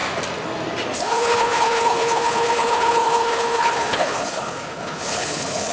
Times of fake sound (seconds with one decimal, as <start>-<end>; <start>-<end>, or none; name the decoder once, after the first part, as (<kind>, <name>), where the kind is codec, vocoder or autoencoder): 1.0-5.7 (codec, HILCodec)